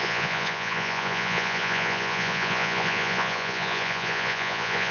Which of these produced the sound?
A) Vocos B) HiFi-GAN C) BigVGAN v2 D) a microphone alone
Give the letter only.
A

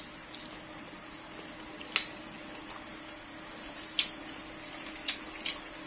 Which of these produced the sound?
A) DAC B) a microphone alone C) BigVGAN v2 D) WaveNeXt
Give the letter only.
B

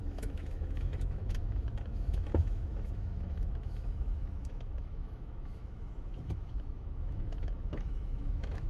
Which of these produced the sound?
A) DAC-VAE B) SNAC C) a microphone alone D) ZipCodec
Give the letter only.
A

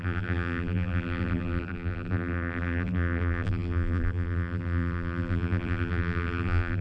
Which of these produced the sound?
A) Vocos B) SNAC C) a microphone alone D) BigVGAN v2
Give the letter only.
D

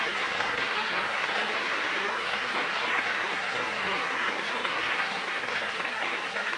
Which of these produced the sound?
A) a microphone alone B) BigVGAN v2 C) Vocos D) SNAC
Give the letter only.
D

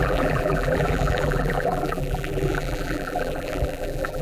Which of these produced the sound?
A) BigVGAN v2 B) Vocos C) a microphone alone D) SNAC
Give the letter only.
A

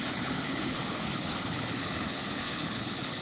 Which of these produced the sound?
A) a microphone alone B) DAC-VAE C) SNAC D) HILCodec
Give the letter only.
D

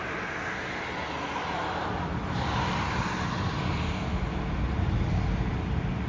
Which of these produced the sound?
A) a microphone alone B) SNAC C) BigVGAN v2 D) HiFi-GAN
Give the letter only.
A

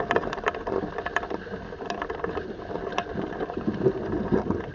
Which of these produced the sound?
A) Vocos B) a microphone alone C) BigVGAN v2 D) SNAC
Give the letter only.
B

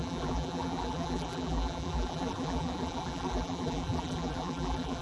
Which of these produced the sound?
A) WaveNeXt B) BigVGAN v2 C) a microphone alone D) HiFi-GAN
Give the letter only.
B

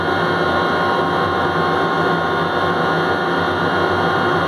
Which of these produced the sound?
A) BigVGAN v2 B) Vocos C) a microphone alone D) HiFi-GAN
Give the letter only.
C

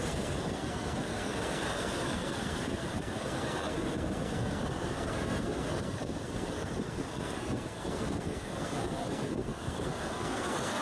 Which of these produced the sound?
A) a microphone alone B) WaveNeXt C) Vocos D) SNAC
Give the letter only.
D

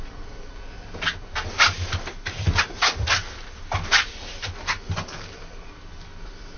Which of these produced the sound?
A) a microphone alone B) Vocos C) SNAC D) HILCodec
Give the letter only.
A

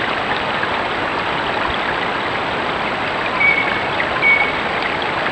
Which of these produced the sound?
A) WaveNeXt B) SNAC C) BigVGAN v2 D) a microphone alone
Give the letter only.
D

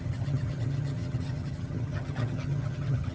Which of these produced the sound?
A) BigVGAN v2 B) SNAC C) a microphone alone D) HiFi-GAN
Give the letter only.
D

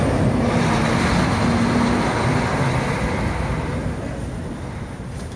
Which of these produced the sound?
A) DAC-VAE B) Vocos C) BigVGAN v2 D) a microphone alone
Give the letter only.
D